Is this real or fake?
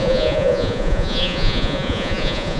fake